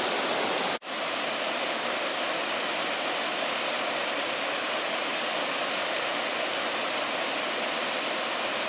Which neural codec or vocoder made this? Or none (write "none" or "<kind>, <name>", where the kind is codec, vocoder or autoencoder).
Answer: none